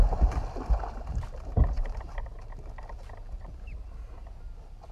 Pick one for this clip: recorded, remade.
recorded